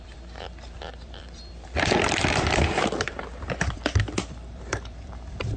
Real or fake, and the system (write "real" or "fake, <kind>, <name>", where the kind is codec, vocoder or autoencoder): fake, vocoder, BigVGAN v2